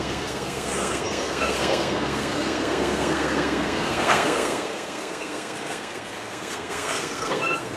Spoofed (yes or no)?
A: yes